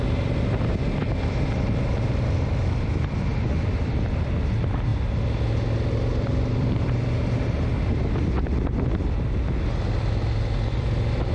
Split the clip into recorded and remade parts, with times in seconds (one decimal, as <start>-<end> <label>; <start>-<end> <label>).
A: 0.0-11.3 recorded